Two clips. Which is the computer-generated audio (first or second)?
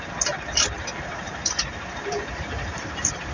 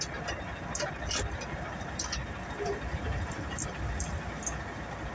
first